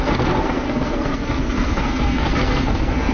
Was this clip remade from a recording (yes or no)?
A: yes